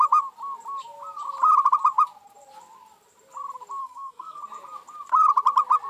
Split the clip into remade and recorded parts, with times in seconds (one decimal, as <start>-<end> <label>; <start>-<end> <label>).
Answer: 0.0-3.8 recorded; 3.8-4.4 remade; 4.4-5.9 recorded